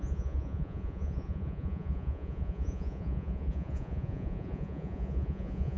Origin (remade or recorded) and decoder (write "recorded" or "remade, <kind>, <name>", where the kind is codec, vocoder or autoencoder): remade, vocoder, Vocos